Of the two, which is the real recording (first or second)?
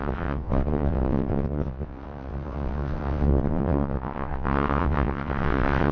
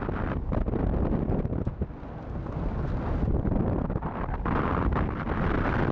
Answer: second